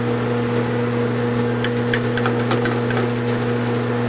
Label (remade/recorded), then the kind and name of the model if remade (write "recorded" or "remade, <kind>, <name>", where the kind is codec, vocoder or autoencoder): recorded